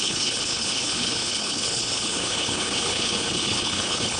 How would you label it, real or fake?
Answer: fake